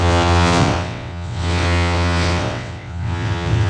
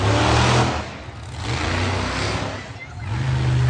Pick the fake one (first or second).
first